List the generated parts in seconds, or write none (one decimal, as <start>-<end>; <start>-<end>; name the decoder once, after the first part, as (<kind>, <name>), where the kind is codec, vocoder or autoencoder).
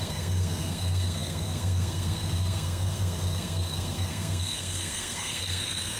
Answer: 0.0-6.0 (codec, SNAC)